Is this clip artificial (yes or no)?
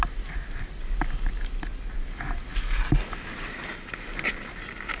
no